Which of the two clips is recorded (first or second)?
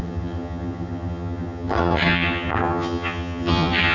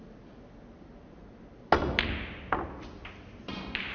second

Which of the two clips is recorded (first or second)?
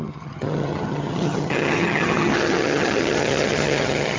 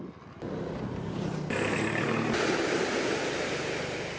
second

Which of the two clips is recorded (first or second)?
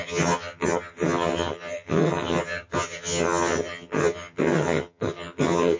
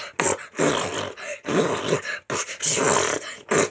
second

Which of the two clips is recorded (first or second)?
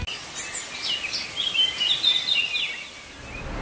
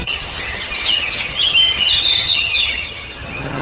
first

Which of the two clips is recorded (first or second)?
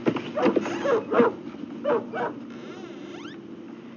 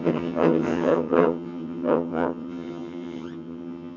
first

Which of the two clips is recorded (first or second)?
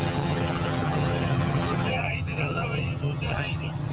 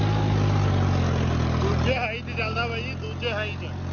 second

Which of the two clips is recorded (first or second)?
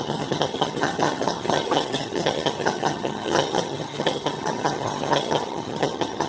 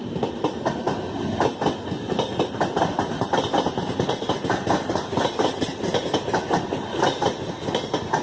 second